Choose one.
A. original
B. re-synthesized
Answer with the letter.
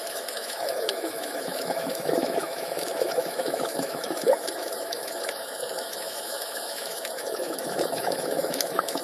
B